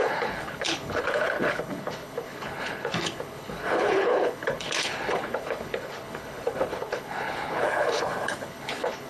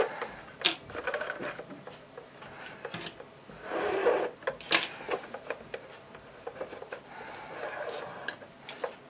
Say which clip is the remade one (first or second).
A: first